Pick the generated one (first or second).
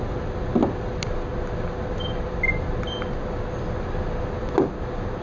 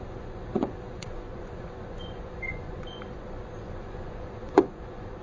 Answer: second